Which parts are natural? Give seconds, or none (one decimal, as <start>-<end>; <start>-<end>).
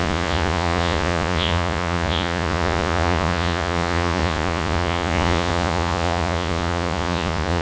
none